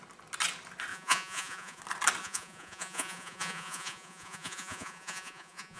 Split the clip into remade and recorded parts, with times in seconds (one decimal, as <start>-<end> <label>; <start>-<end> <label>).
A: 0.0-0.9 recorded; 0.9-1.8 remade; 1.8-2.2 recorded; 2.2-5.8 remade